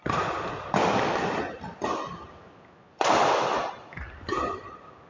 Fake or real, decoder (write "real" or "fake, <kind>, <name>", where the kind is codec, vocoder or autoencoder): real